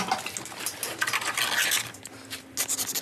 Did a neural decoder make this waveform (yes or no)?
no